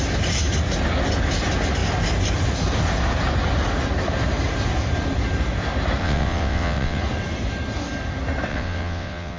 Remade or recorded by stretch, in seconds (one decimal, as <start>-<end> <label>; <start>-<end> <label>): 0.0-6.0 recorded; 6.0-7.0 remade; 7.0-8.5 recorded; 8.5-9.4 remade